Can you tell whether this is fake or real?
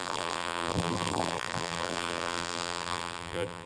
fake